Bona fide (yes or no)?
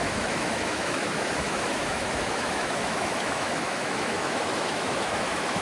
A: no